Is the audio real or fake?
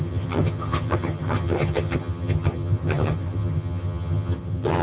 fake